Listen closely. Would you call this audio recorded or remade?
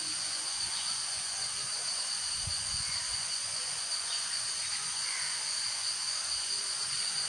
remade